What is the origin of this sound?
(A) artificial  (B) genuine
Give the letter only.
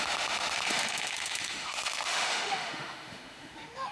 A